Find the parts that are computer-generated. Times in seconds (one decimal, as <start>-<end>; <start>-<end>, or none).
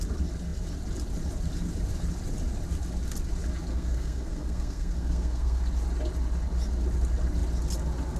3.7-5.6